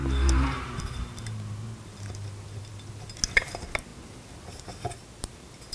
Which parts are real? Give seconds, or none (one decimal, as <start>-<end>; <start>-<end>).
0.8-5.7